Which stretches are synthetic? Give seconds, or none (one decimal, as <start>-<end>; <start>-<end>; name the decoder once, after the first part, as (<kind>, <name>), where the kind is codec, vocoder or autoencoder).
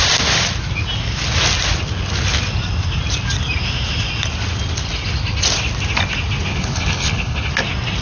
6.5-7.5 (codec, HILCodec)